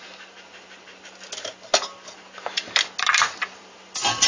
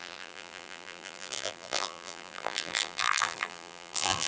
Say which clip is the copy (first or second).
second